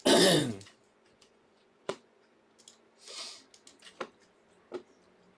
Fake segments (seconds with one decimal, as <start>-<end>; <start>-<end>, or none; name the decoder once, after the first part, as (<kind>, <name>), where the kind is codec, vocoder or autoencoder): 0.4-2.6 (vocoder, Vocos)